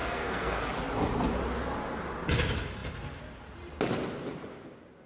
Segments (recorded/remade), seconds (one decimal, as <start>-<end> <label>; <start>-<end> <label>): 0.0-0.6 remade; 0.6-5.1 recorded

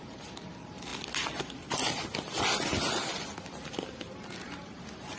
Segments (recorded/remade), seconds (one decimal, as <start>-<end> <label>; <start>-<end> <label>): 0.0-0.9 remade; 0.9-1.4 recorded; 1.4-1.8 remade; 1.8-4.4 recorded; 4.4-5.2 remade

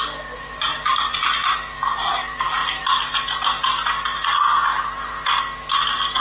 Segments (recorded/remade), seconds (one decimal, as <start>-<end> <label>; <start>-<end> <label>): 0.0-6.2 recorded

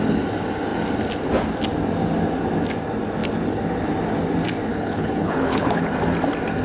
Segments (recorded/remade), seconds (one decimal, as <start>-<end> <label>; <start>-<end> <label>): 0.0-4.7 recorded; 4.7-5.9 remade; 5.9-6.6 recorded

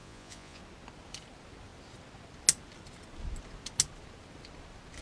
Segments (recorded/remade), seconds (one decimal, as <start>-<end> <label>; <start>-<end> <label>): 0.0-0.6 remade; 0.6-5.0 recorded

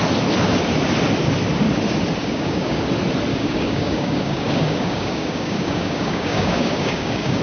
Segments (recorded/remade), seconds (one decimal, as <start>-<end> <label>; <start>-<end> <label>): 0.0-2.2 recorded; 2.2-2.8 remade; 2.8-3.3 recorded; 3.3-7.4 remade

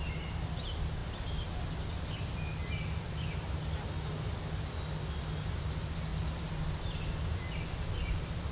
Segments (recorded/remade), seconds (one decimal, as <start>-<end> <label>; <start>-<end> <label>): 0.0-8.5 recorded